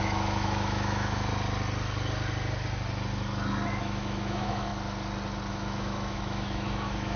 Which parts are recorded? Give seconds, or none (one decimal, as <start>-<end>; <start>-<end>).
1.3-3.8; 4.7-5.5